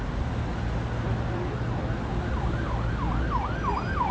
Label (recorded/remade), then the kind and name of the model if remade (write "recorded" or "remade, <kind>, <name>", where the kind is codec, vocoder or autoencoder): recorded